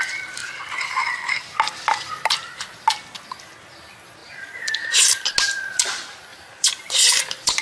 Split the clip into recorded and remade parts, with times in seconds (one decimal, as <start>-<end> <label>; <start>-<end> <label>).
0.0-4.2 recorded; 4.2-5.2 remade; 5.2-6.3 recorded; 6.3-7.6 remade